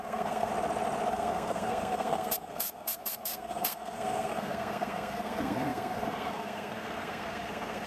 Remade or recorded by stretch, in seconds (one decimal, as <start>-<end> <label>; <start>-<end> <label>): 0.0-0.5 remade; 0.5-1.1 recorded; 1.1-7.9 remade